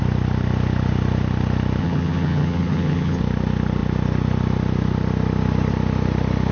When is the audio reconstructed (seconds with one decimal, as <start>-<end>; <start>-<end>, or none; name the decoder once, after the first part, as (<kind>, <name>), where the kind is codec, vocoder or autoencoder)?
1.8-3.2 (vocoder, HiFi-GAN)